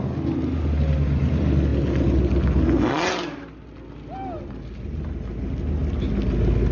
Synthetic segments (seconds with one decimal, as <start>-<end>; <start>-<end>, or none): none